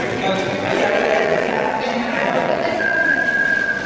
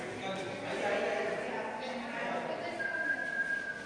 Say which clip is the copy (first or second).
first